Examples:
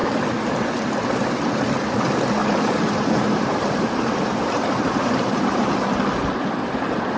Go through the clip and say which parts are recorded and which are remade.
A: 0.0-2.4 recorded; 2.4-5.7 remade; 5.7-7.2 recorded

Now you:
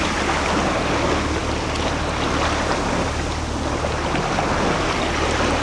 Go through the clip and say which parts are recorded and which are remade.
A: 0.0-5.6 recorded

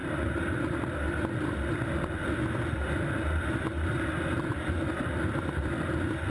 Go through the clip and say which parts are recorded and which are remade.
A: 0.0-6.3 recorded

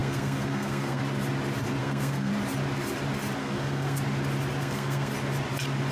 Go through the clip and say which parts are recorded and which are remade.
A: 0.0-1.0 remade; 1.0-1.8 recorded; 1.8-2.3 remade; 2.3-3.4 recorded; 3.4-4.0 remade; 4.0-4.6 recorded; 4.6-5.1 remade; 5.1-5.9 recorded